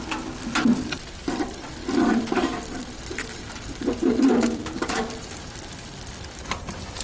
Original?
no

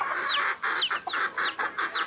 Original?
yes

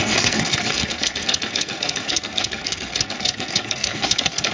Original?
no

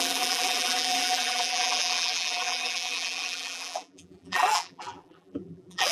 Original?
no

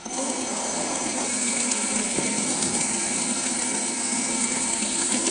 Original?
no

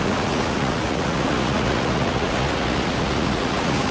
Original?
no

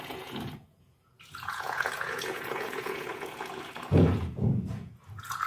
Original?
no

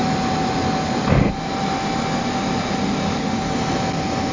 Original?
yes